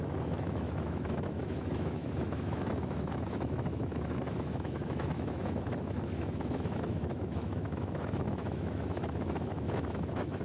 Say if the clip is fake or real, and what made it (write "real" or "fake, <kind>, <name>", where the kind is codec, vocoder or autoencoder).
fake, autoencoder, DAC-VAE